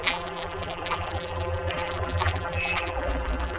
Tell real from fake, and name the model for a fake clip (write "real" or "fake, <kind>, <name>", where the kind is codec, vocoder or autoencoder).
fake, vocoder, BigVGAN v2